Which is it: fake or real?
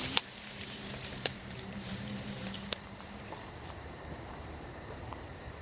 fake